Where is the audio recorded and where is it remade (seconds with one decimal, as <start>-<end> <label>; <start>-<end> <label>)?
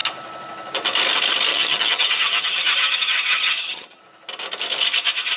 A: 0.0-1.5 recorded; 1.5-4.0 remade; 4.0-5.4 recorded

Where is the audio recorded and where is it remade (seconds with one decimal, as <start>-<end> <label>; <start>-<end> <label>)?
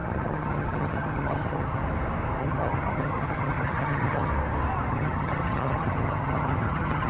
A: 0.0-1.8 remade; 1.8-2.4 recorded; 2.4-4.3 remade; 4.3-4.9 recorded; 4.9-7.1 remade